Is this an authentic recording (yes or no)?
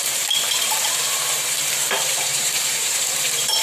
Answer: no